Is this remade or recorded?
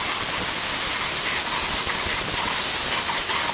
recorded